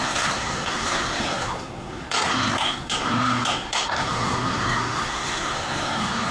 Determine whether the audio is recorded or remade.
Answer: remade